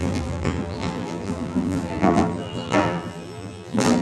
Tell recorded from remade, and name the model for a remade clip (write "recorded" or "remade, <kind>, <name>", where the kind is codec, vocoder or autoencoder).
remade, vocoder, BigVGAN v2